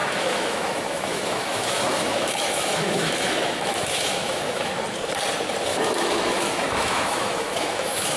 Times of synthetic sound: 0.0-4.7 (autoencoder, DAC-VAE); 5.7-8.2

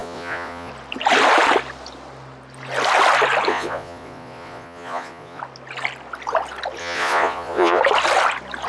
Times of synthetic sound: 0.0-0.7 (vocoder, Vocos); 3.5-5.4; 6.8-7.8

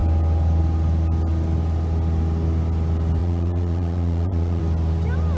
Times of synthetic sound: 3.2-4.6 (vocoder, Vocos)

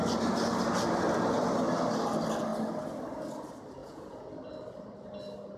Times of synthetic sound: 3.8-4.3 (vocoder, Vocos)

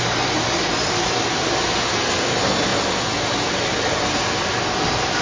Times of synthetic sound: none

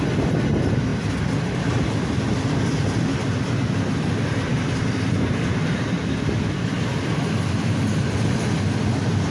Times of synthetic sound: 4.5-6.0 (vocoder, BigVGAN v2)